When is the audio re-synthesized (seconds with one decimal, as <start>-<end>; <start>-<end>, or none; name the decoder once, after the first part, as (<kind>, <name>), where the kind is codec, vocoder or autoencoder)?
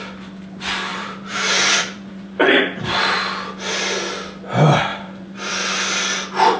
0.9-2.9 (vocoder, BigVGAN v2); 4.9-5.5